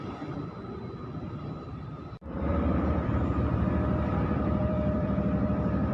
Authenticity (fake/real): fake